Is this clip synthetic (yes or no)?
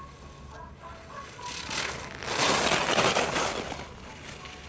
no